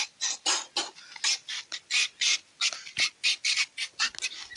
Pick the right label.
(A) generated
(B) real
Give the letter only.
B